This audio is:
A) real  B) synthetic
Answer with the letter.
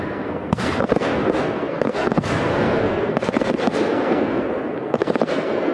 B